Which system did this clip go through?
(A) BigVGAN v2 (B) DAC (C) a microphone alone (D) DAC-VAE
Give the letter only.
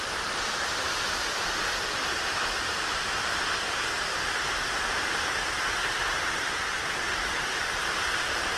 A